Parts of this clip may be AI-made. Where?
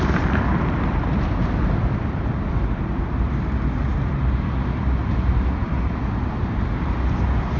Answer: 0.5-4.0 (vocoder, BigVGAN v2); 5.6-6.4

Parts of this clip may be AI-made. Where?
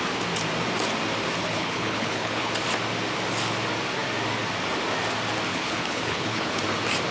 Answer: 1.4-2.5 (codec, HILCodec); 5.5-6.6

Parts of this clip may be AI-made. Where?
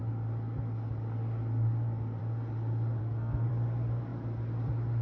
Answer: 3.0-3.5 (codec, SNAC)